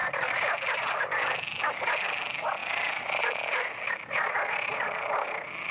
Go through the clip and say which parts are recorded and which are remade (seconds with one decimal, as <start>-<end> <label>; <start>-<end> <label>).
0.0-1.0 remade; 1.0-4.7 recorded; 4.7-5.7 remade